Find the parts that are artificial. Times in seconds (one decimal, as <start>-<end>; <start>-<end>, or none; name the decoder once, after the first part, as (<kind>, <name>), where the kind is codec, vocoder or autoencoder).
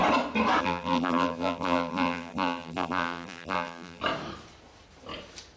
0.6-4.0 (vocoder, BigVGAN v2)